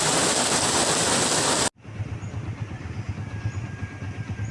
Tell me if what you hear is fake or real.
real